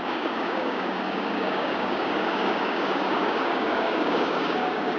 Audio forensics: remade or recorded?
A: remade